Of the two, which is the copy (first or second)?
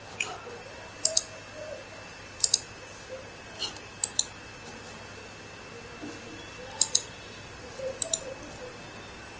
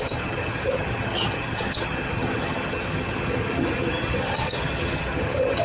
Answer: second